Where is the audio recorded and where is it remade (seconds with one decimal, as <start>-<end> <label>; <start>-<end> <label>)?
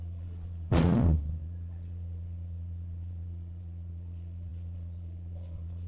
0.0-5.9 remade